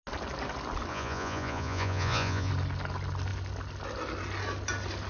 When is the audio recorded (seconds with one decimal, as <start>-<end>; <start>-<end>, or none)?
0.0-0.9; 2.5-5.1